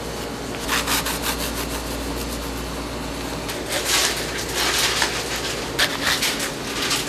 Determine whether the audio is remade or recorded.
recorded